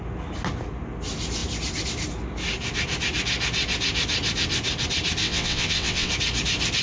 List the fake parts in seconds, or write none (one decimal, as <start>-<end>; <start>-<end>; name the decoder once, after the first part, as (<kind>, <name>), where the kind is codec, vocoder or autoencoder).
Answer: 5.2-6.1 (vocoder, WaveNeXt)